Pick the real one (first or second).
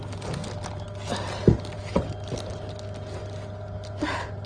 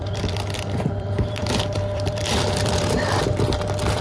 first